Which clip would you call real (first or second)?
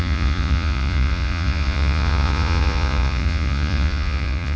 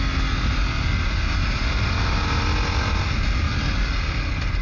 second